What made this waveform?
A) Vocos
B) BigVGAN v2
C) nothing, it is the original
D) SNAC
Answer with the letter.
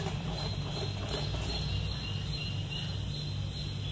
C